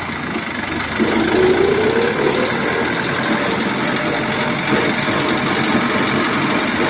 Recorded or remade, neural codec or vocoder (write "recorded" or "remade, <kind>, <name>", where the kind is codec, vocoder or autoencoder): recorded